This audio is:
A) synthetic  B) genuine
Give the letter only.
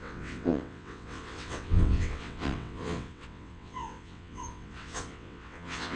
A